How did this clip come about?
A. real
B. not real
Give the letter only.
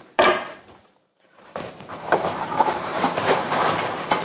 B